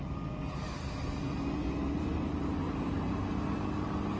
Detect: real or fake real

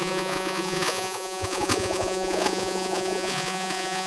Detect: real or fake fake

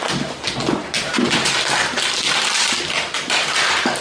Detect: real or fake real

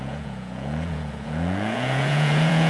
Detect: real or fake fake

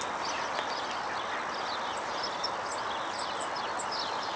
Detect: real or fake real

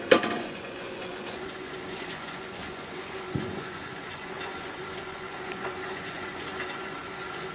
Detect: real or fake fake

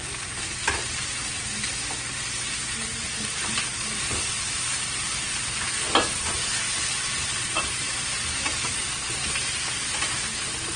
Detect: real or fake real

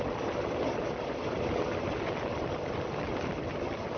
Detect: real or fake real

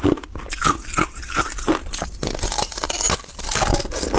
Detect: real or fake real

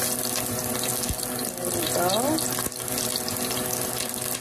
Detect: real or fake real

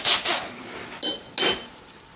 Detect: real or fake real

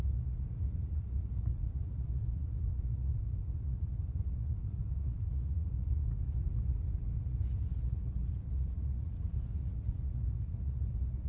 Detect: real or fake fake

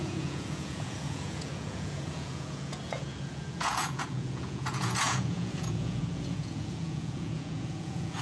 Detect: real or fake fake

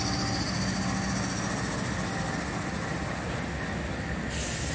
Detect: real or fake real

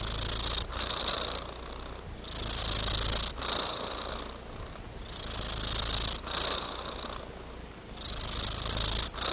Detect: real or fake real